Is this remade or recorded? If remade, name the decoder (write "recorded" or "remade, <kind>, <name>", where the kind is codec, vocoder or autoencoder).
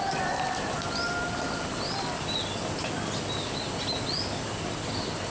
recorded